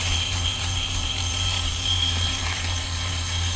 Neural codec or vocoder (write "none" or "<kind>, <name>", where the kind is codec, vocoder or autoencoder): vocoder, BigVGAN v2